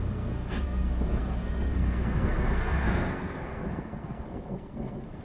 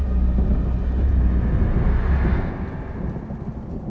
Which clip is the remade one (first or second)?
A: first